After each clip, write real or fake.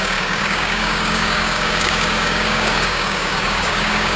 fake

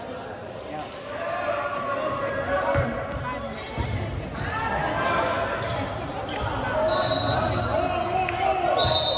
real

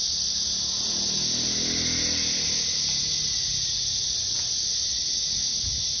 real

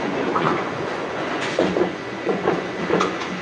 fake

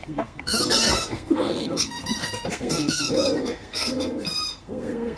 fake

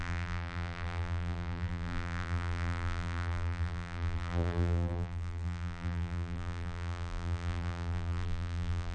fake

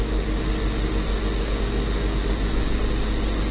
real